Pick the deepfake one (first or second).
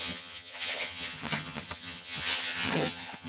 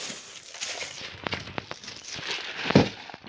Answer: first